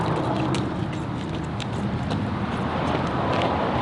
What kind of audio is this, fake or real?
real